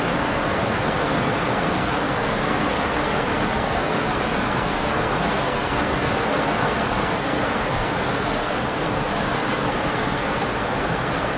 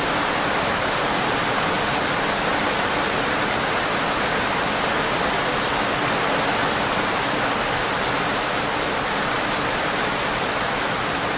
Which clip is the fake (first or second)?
first